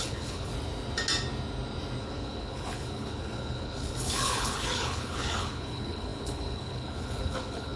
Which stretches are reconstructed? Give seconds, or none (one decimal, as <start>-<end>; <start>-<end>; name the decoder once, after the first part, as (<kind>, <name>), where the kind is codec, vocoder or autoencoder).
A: 0.0-0.5 (codec, HILCodec); 2.0-7.8